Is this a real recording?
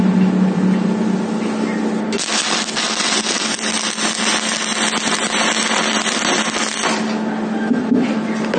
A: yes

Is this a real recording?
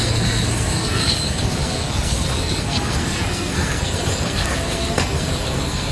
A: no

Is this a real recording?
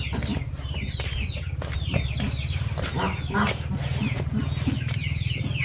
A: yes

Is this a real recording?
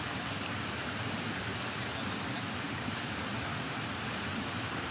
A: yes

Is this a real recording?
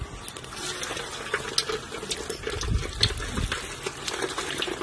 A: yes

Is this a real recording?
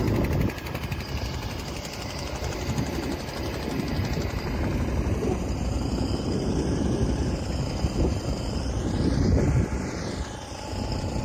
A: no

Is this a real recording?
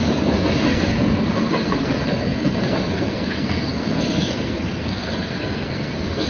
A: no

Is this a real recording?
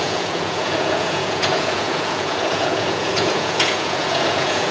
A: no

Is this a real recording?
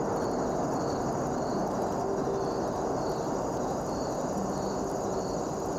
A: yes